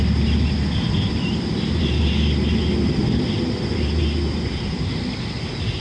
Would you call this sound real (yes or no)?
yes